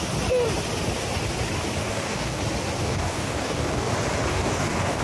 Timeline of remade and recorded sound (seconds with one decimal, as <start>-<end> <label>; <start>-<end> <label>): 0.0-1.8 recorded; 1.8-2.4 remade; 2.4-2.8 recorded; 2.8-3.9 remade; 3.9-4.3 recorded; 4.3-5.0 remade